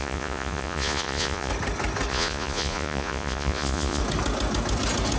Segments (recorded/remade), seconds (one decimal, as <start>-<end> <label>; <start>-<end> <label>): 0.0-1.5 remade; 1.5-2.1 recorded; 2.1-4.0 remade; 4.0-5.2 recorded